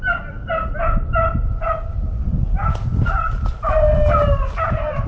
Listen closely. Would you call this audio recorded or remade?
recorded